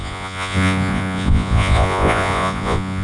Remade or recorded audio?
remade